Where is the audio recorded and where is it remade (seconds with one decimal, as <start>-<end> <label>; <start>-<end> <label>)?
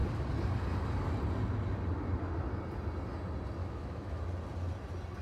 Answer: 0.0-3.6 recorded; 3.6-4.2 remade; 4.2-5.2 recorded